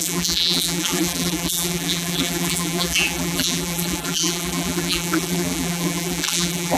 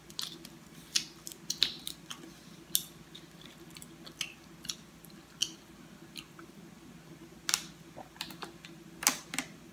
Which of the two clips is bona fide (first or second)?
second